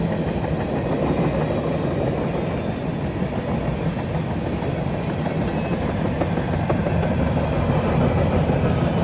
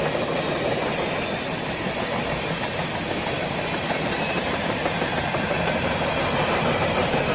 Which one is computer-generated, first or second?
second